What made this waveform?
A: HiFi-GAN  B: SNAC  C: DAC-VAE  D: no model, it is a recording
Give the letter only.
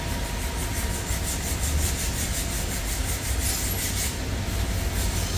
D